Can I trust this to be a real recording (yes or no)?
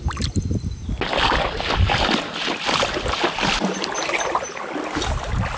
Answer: yes